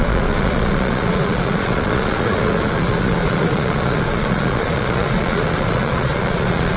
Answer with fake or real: fake